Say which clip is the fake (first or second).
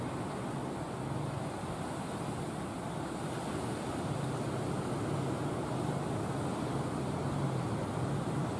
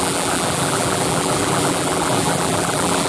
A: second